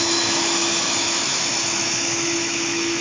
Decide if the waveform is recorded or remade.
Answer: remade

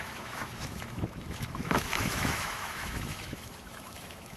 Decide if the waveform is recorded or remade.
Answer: remade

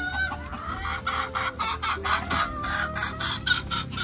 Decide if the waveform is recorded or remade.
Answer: recorded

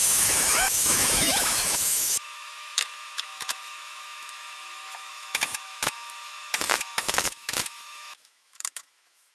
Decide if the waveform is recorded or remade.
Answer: remade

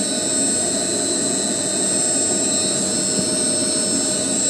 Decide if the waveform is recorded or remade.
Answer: recorded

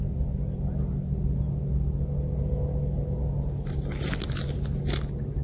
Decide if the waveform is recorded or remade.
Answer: recorded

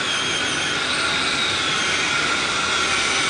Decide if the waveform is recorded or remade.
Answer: recorded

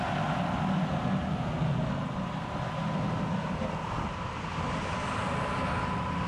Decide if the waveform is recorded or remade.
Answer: recorded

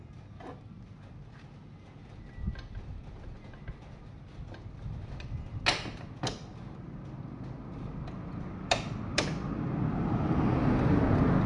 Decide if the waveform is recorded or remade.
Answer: recorded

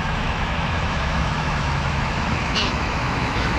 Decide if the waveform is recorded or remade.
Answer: remade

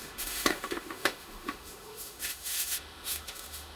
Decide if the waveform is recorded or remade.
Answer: remade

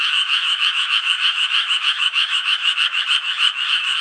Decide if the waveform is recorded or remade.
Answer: remade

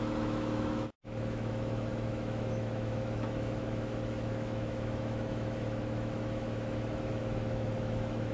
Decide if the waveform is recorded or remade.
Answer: remade